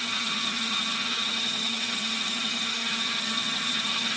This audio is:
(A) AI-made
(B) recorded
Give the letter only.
A